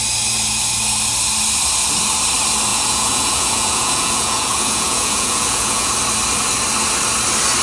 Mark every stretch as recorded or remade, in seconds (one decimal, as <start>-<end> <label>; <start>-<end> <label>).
0.0-2.7 recorded; 2.7-5.9 remade; 5.9-7.6 recorded